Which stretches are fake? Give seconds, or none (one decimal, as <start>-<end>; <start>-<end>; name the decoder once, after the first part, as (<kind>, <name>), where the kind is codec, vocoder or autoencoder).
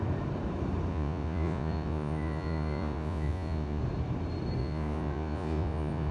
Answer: 0.9-3.8 (vocoder, Vocos); 4.6-6.1